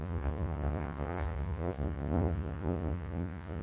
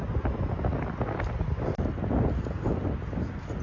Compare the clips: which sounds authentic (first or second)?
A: second